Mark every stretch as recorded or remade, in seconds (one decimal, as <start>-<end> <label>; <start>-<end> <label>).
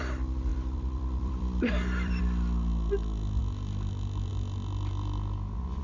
0.0-0.5 recorded; 0.5-2.2 remade; 2.2-3.4 recorded; 3.4-4.3 remade; 4.3-5.8 recorded